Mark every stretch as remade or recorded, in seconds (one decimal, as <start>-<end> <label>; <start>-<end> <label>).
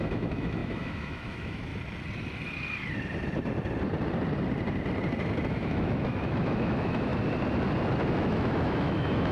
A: 0.0-1.7 remade; 1.7-5.5 recorded; 5.5-7.1 remade; 7.1-8.1 recorded; 8.1-9.3 remade